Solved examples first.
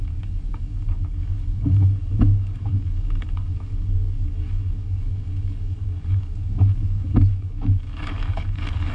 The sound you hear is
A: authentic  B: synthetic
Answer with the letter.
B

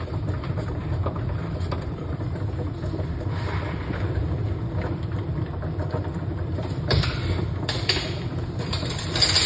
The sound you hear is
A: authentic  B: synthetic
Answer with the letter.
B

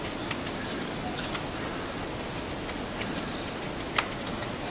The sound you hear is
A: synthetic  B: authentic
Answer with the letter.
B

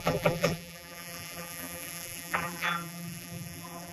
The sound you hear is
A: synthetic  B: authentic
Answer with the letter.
A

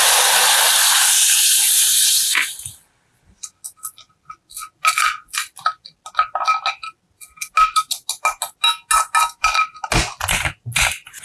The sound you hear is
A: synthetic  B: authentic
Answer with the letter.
B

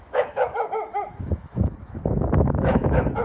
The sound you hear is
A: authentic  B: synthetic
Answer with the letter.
B